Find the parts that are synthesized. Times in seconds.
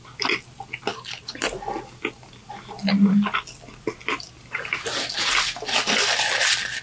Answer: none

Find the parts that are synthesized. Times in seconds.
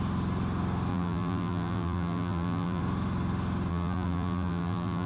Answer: 0.9-2.8 (vocoder, BigVGAN v2); 3.7-5.1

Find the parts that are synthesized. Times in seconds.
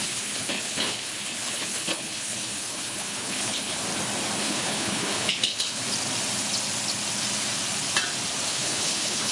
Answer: 0.0-3.8 (codec, HILCodec); 4.4-5.8; 8.5-9.3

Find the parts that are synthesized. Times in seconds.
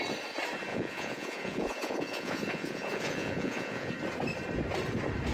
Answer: 0.7-3.9 (vocoder, Vocos)